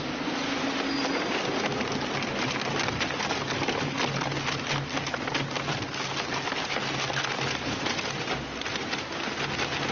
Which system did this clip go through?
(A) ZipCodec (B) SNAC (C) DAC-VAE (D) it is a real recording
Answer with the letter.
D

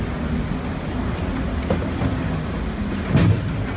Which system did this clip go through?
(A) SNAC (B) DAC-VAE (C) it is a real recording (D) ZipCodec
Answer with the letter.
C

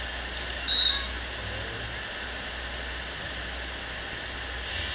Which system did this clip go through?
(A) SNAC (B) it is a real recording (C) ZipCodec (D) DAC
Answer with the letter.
B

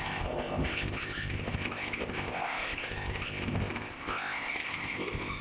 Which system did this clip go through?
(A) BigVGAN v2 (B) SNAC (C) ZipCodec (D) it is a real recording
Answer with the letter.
C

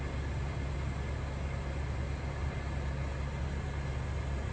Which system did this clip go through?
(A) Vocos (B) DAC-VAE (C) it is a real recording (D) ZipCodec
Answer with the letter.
C